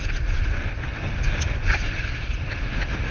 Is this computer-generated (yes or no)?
no